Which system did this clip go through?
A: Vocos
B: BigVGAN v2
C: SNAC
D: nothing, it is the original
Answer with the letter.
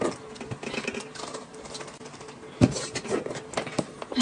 D